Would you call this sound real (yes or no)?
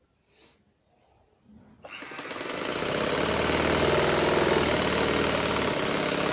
yes